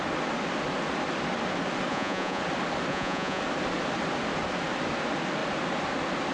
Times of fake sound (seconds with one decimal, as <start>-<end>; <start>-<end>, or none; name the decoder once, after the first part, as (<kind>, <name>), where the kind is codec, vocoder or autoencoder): 1.9-2.4 (vocoder, Vocos); 2.9-3.4